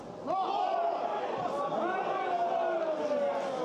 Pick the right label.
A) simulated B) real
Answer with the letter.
B